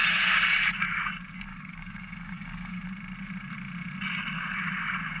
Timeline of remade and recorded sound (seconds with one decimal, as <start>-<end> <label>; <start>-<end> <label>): 0.0-1.5 recorded; 1.5-2.8 remade; 2.8-5.2 recorded